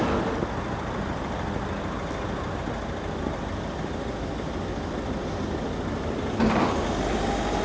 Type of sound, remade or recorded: recorded